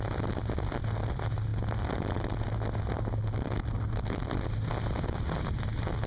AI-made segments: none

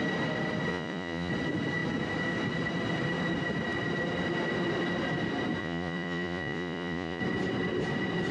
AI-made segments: 0.7-1.3 (vocoder, Vocos); 5.6-7.2

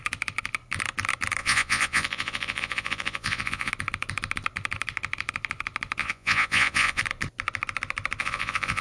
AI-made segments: 1.4-3.7 (vocoder, Vocos); 6.0-7.0; 8.2-8.8

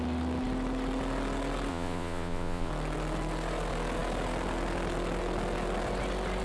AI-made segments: 1.7-2.7 (vocoder, Vocos)

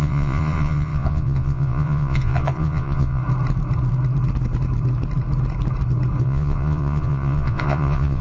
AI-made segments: 0.0-3.2 (vocoder, Vocos); 6.2-8.2

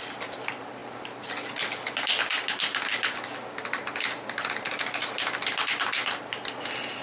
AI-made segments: none

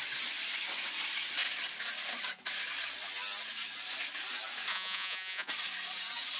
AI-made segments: 4.7-5.5 (vocoder, Vocos)